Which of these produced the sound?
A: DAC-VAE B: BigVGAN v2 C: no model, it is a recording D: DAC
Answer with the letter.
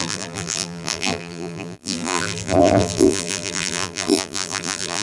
B